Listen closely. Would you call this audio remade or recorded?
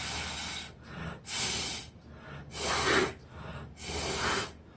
recorded